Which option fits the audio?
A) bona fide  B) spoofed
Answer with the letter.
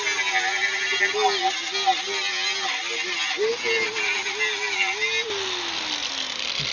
A